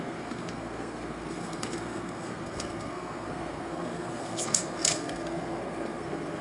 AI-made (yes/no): yes